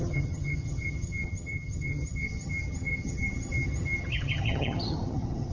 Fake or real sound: fake